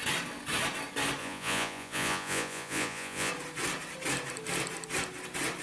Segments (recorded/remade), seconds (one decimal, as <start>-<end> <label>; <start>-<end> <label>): 0.0-1.2 recorded; 1.2-3.3 remade; 3.3-5.6 recorded